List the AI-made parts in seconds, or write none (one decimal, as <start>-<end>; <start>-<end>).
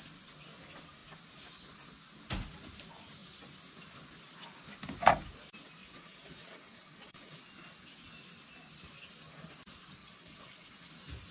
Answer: 5.8-7.4; 10.0-10.9